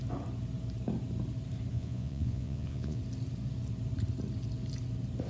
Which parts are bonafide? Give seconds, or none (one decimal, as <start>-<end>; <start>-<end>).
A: 0.0-1.7; 3.0-5.3